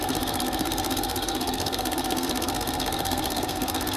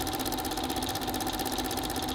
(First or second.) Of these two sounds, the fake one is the first